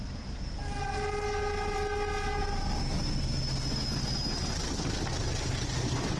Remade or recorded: recorded